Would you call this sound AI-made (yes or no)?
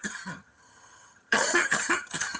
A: yes